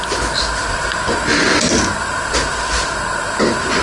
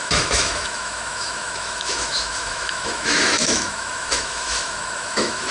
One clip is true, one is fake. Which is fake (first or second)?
second